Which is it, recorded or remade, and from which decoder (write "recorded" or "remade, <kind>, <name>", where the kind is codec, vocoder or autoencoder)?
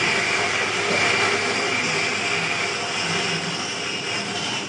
recorded